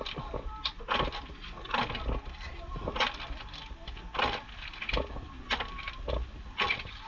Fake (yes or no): no